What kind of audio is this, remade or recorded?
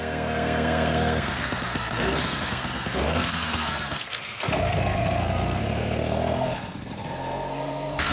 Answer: remade